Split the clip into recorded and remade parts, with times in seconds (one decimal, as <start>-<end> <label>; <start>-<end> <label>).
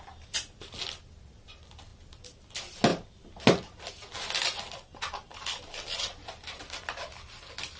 0.0-7.8 recorded